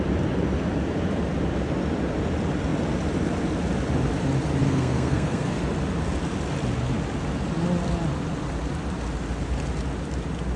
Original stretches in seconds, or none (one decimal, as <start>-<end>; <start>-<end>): 0.0-4.6; 5.6-10.6